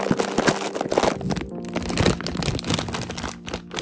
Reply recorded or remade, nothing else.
recorded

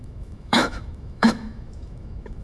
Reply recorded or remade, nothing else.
remade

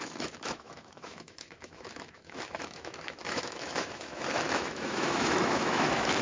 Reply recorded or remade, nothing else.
remade